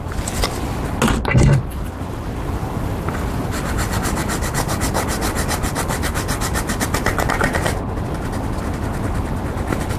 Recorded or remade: recorded